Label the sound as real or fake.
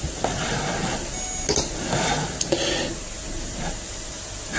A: real